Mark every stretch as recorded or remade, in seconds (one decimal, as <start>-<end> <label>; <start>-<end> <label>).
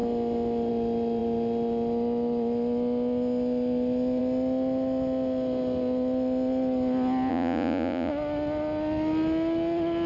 0.0-7.3 recorded; 7.3-8.1 remade; 8.1-10.1 recorded